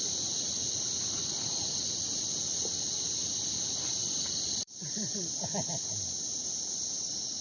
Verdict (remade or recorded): remade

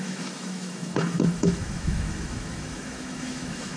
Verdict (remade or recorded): remade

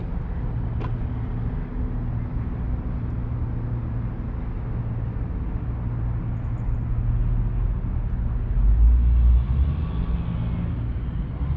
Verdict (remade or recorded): recorded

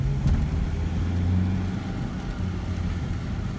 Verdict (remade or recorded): recorded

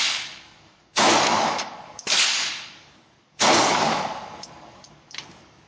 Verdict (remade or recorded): remade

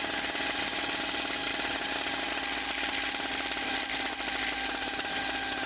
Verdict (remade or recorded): recorded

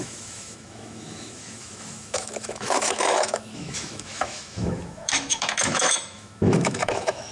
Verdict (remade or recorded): remade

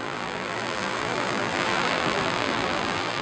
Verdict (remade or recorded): remade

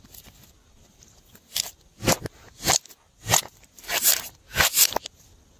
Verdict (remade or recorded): recorded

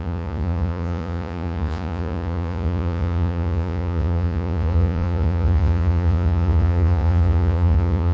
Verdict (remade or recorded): remade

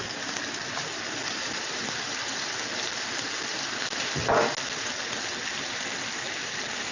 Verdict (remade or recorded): recorded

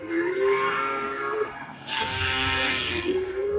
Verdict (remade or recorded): remade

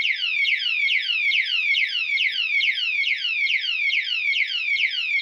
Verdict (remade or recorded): remade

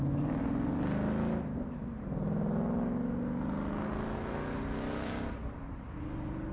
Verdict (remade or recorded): recorded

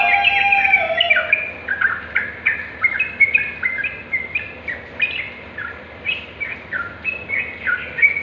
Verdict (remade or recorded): recorded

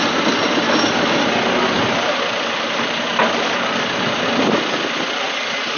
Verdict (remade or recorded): recorded